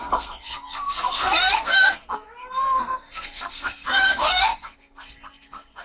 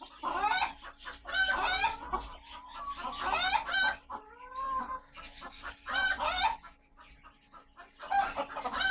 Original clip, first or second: second